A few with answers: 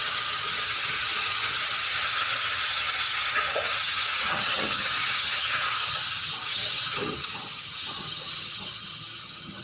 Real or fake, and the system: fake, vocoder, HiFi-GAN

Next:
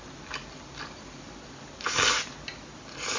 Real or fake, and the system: real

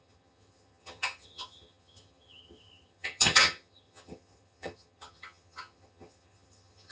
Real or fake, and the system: fake, vocoder, HiFi-GAN